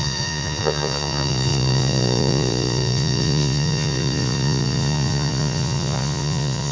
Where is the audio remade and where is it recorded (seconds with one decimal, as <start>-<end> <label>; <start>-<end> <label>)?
0.0-6.7 remade